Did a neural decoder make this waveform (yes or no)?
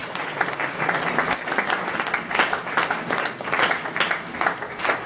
no